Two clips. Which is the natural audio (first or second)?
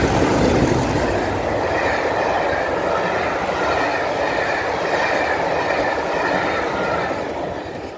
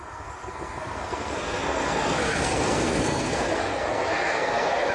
first